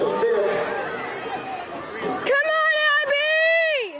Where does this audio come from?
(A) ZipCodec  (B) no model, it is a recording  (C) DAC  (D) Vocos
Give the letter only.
B